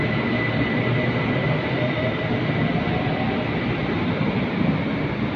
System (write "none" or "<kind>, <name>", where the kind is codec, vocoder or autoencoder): none